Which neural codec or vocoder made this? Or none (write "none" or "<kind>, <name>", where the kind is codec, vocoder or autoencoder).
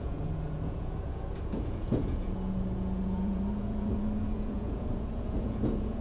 vocoder, Vocos